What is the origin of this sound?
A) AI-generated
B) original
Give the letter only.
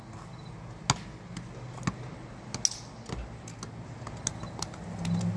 B